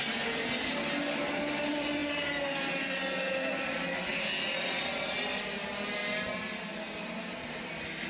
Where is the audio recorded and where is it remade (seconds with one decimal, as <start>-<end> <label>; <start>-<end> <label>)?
0.0-8.1 recorded